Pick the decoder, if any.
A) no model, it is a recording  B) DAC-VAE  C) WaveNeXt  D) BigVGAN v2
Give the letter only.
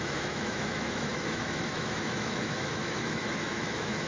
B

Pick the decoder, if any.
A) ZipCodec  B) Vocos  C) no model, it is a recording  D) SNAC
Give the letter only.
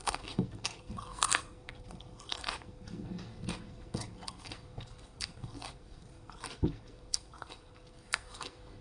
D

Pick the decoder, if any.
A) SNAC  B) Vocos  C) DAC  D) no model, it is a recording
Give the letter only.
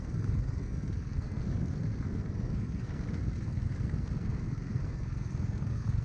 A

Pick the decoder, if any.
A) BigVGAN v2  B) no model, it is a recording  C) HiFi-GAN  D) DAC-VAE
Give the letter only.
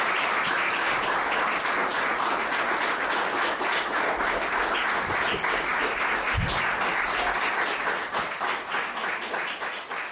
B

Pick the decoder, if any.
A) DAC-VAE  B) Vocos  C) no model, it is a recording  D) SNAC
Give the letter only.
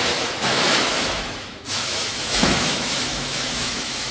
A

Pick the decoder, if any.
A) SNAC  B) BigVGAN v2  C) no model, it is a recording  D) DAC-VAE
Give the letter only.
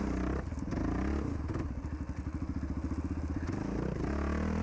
C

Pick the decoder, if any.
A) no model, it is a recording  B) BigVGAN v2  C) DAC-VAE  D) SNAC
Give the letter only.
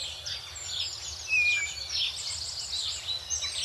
A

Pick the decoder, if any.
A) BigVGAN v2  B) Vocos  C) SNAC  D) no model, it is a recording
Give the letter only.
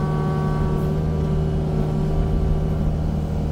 D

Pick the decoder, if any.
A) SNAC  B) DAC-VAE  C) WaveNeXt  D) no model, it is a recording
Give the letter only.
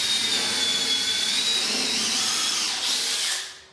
D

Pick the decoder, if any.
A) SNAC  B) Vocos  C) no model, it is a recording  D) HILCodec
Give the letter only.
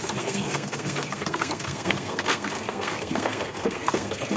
A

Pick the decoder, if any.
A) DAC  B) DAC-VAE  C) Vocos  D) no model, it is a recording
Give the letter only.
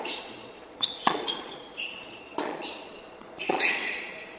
C